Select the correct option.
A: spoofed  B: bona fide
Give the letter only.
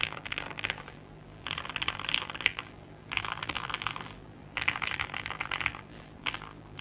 A